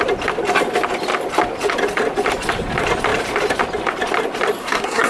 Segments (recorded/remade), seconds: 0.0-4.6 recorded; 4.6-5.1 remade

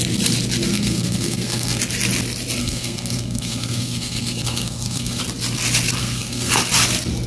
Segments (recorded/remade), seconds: 0.0-0.7 recorded; 0.7-1.8 remade; 1.8-2.6 recorded; 2.6-5.2 remade; 5.2-6.0 recorded; 6.0-6.5 remade; 6.5-7.3 recorded

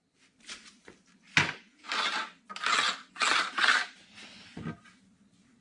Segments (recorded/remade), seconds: 0.0-5.6 recorded